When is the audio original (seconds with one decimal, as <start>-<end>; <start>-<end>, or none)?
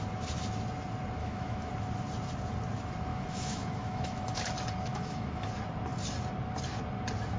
0.0-1.2; 1.7-3.1; 4.5-4.9; 5.5-7.4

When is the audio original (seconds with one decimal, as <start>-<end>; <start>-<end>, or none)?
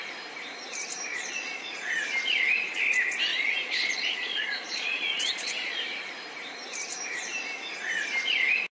0.0-1.1; 2.1-3.3; 5.8-8.7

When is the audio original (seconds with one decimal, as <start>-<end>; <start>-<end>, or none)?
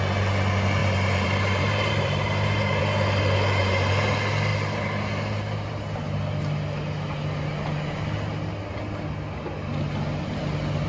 0.0-0.8; 2.8-4.5; 5.7-10.9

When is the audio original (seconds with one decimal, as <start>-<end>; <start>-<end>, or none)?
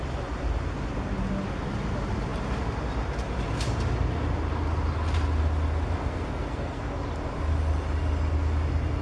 0.0-6.0; 6.8-9.0